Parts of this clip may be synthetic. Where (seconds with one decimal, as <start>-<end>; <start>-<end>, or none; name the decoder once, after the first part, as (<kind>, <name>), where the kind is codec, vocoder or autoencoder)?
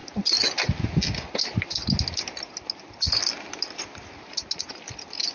none